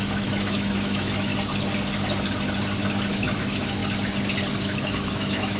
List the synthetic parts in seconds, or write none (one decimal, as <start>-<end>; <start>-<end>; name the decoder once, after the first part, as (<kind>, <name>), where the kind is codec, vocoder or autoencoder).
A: 0.0-1.3 (autoencoder, DAC-VAE); 3.1-3.8; 4.6-5.6